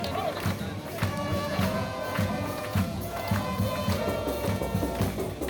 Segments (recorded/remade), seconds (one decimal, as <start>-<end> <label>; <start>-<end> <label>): 0.0-1.3 recorded; 1.3-4.6 remade; 4.6-5.5 recorded